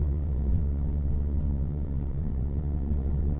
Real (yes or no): no